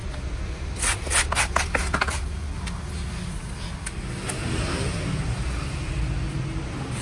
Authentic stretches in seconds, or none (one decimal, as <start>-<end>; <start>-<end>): 0.0-4.4